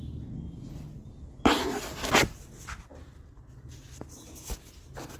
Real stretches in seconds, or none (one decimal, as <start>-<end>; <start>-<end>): 0.0-5.2